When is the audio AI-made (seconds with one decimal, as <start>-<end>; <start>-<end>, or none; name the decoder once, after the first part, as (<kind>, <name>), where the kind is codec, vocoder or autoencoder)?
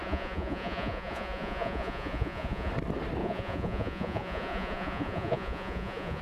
0.0-2.7 (vocoder, Vocos); 3.2-6.2